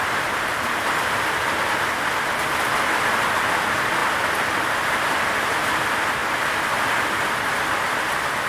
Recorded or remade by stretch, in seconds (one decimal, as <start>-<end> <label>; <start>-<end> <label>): 0.0-4.0 recorded; 4.0-5.3 remade; 5.3-8.5 recorded